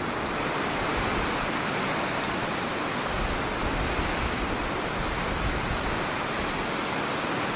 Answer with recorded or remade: recorded